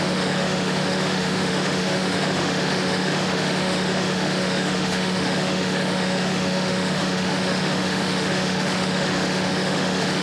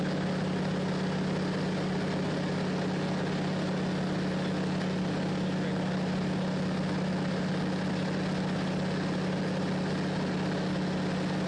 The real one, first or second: second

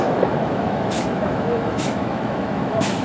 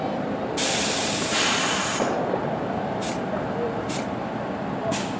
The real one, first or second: second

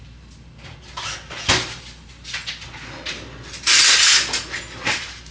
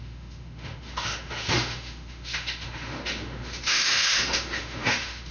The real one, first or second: first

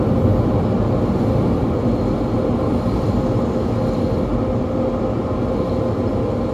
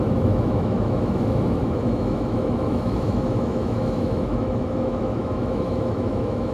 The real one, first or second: first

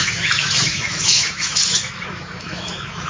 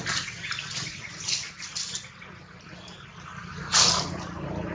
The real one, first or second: second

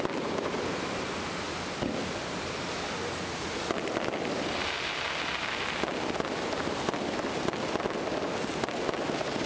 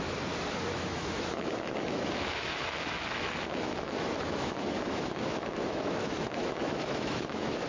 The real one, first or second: first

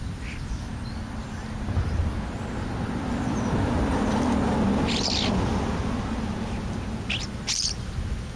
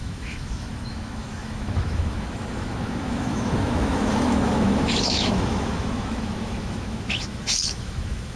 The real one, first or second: first